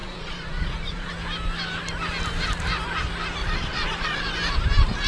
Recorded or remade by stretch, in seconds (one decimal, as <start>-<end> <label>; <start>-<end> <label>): 0.0-1.1 remade; 1.1-3.4 recorded; 3.4-4.2 remade; 4.2-5.1 recorded